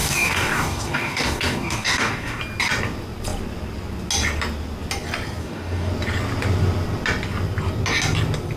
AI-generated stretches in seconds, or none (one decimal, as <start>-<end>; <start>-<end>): 0.0-2.4; 5.4-5.9